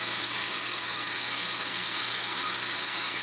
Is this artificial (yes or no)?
yes